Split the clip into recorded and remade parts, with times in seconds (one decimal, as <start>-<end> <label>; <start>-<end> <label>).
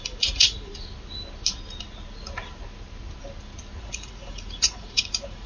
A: 0.0-0.7 remade; 0.7-3.8 recorded; 3.8-5.5 remade